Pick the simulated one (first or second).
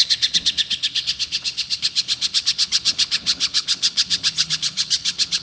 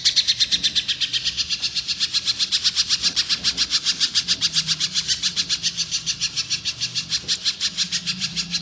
first